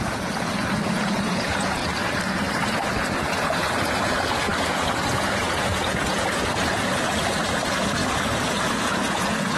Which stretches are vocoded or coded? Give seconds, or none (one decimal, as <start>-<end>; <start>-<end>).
0.0-1.8; 3.1-9.6